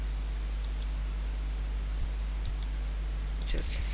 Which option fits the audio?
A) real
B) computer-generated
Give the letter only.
B